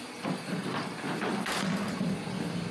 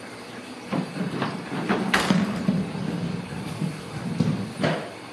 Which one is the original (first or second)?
first